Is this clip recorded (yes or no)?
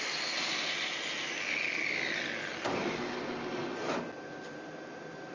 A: yes